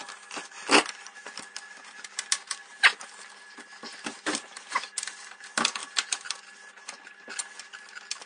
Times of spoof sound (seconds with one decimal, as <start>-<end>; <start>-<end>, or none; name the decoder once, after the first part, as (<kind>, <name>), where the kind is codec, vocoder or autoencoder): none